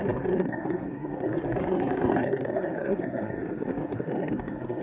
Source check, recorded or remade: remade